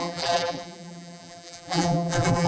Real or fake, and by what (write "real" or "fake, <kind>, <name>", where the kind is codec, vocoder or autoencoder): fake, vocoder, BigVGAN v2